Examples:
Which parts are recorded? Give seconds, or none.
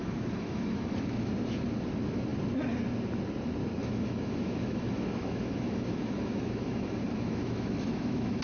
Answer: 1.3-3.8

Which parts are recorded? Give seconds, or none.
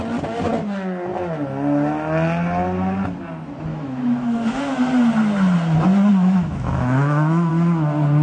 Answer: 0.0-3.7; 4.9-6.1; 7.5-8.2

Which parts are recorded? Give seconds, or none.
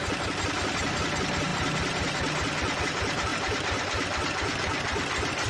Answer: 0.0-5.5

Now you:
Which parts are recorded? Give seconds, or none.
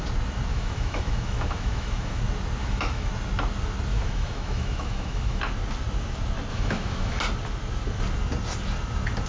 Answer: 0.0-0.5; 2.2-2.6; 3.1-3.9; 5.4-6.5; 7.2-9.3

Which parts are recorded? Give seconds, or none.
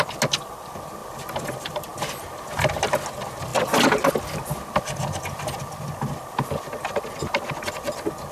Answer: 0.0-8.3